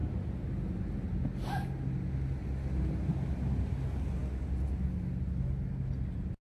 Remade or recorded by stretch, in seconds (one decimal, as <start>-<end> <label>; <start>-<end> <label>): 0.0-6.5 recorded